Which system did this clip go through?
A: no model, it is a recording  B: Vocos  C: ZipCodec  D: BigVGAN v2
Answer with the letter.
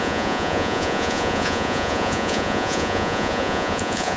B